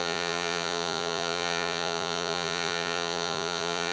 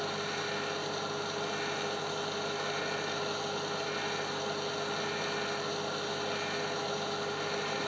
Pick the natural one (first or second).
second